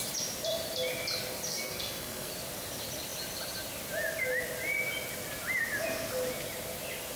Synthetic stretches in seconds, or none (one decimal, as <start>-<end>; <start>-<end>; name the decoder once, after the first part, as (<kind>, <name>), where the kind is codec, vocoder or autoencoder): 1.5-2.3 (codec, SNAC)